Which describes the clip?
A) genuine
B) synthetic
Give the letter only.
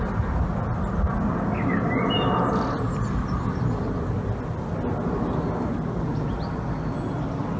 A